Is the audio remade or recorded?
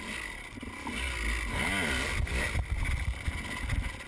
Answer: recorded